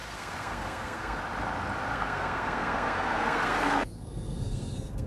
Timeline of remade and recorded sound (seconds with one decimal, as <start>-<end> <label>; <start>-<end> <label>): 0.0-1.2 remade; 1.2-1.9 recorded; 1.9-5.1 remade